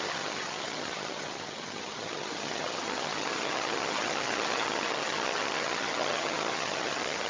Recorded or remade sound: remade